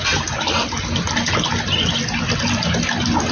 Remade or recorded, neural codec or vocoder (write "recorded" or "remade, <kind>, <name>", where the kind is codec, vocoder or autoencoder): recorded